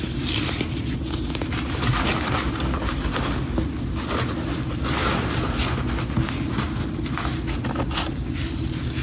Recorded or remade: recorded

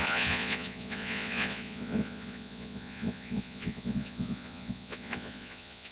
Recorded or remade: remade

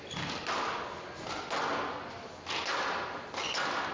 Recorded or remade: recorded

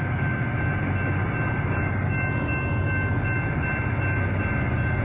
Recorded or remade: recorded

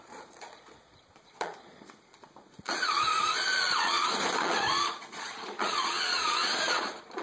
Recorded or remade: remade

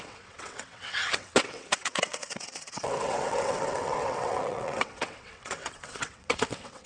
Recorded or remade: remade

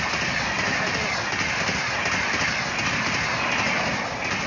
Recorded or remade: recorded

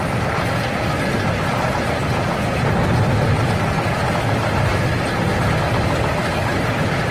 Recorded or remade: recorded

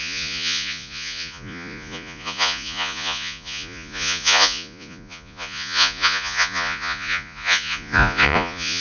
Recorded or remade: remade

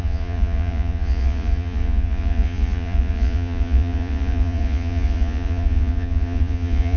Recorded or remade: remade